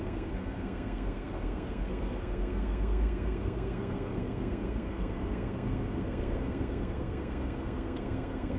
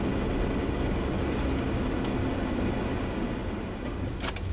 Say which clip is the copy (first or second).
first